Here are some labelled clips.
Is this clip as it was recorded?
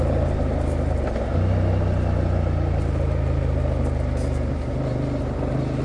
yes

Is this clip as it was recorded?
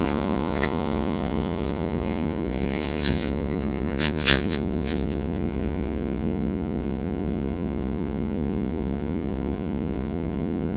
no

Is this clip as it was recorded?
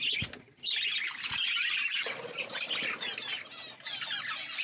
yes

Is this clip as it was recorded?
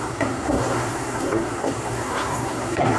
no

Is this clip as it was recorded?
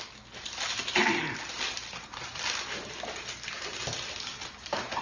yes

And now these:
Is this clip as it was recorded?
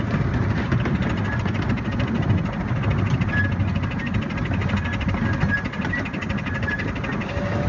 yes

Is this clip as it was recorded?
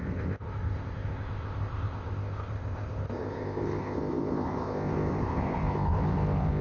no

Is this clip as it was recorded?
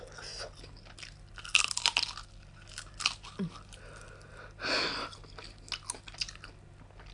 yes